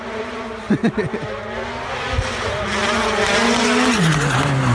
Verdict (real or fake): real